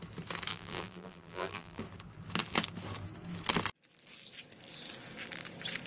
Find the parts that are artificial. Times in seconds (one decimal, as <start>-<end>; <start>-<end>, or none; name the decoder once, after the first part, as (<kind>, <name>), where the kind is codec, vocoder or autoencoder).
0.5-1.8 (vocoder, BigVGAN v2)